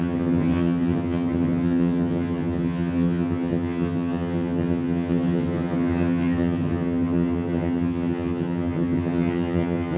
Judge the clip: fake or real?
fake